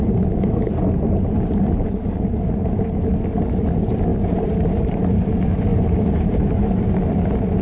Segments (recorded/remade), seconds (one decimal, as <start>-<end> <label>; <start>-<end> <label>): 0.0-4.1 recorded; 4.1-5.3 remade; 5.3-5.7 recorded; 5.7-7.0 remade; 7.0-7.6 recorded